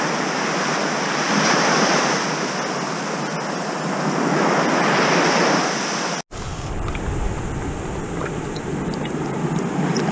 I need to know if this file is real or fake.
real